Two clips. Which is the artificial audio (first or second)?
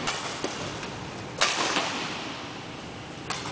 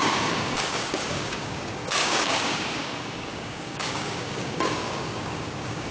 second